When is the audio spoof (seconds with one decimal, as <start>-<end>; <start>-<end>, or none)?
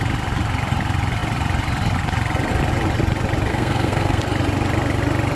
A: 3.5-4.2